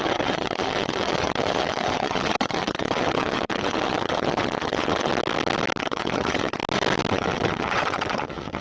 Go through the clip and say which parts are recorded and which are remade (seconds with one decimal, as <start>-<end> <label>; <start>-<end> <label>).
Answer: 0.0-5.1 remade; 5.1-5.8 recorded; 5.8-6.6 remade; 6.6-7.1 recorded; 7.1-8.6 remade